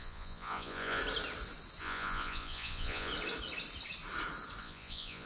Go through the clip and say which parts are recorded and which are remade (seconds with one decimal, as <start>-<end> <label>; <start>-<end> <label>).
0.0-1.0 remade; 1.0-1.8 recorded; 1.8-3.1 remade; 3.1-4.6 recorded; 4.6-5.3 remade